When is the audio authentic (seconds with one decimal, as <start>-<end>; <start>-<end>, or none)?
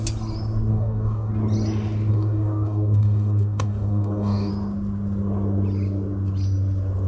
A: 0.0-0.7; 1.3-2.1; 4.5-7.1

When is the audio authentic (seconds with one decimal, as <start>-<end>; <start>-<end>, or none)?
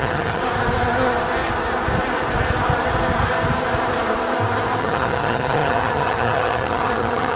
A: 0.4-4.8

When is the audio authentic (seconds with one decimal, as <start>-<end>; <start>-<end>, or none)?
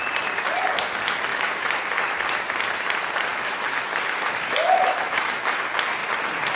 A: 0.0-1.3; 1.8-3.3; 5.6-6.6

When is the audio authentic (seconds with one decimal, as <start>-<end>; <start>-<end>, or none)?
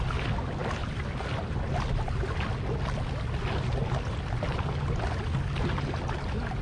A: 0.0-6.6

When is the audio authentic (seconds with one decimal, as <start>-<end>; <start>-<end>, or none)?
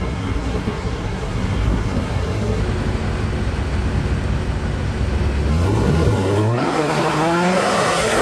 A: 2.6-5.5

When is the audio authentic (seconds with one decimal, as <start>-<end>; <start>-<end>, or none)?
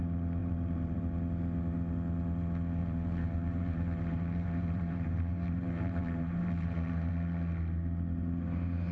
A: 0.0-0.4; 1.0-2.8; 7.1-8.9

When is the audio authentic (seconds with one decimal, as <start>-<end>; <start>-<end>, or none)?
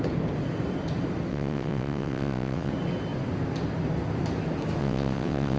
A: 0.0-1.3; 2.7-4.8